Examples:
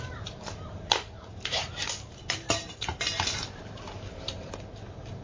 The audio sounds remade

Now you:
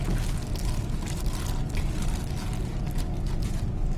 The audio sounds recorded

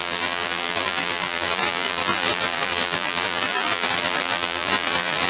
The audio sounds remade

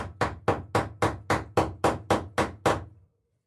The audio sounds recorded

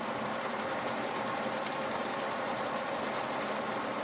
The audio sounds remade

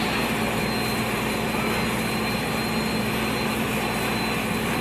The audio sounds recorded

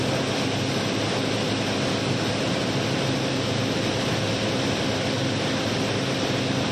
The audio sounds recorded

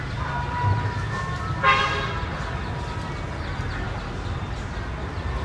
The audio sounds recorded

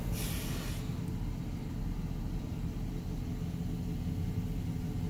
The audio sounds recorded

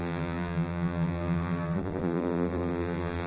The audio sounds remade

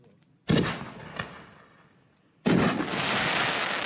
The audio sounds recorded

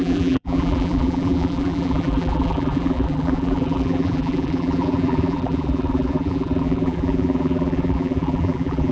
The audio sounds remade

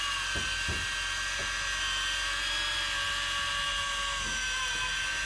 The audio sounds recorded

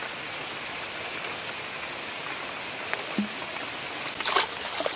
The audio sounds recorded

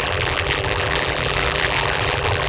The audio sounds remade